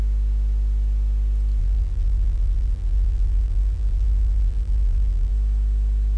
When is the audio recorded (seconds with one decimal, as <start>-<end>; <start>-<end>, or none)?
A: 0.0-1.6; 5.3-6.2